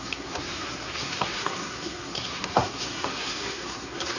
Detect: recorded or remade remade